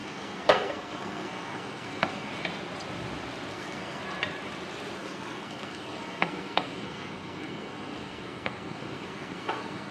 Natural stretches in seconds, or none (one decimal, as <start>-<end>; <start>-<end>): 2.3-3.5; 4.0-5.0